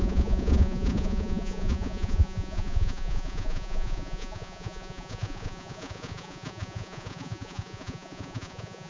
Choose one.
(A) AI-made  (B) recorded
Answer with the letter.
A